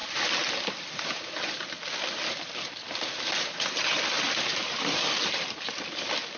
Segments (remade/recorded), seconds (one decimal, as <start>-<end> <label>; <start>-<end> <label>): 0.0-6.4 recorded